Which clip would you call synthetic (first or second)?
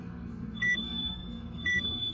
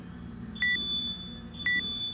first